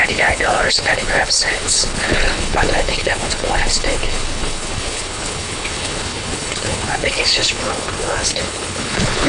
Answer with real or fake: fake